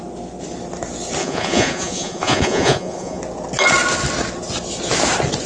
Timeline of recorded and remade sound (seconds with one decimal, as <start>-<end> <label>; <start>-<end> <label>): 0.0-1.2 recorded; 1.2-3.2 remade; 3.2-5.5 recorded